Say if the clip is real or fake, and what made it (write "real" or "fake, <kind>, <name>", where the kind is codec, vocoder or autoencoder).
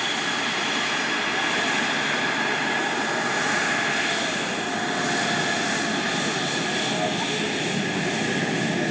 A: real